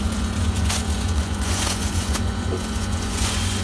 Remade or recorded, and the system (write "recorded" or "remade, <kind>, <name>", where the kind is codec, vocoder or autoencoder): remade, vocoder, Vocos